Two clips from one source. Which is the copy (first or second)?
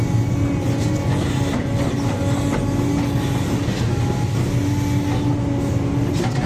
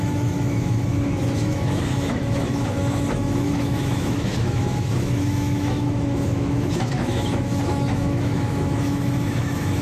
second